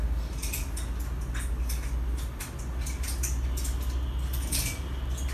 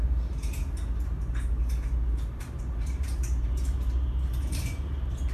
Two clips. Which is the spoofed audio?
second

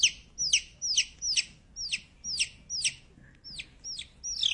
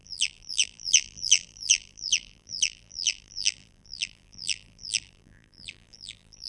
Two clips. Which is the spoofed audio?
second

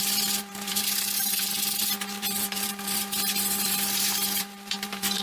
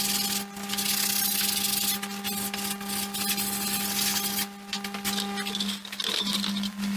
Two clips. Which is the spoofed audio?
first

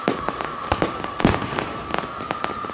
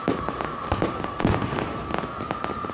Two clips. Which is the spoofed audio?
first